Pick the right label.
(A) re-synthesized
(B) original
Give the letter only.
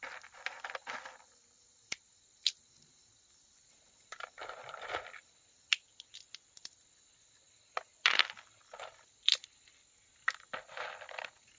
B